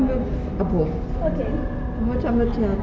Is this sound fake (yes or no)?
no